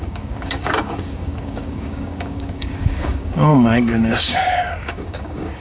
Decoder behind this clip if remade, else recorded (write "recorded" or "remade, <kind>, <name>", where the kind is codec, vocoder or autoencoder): remade, codec, DAC